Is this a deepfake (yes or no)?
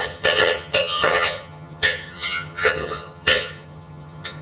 yes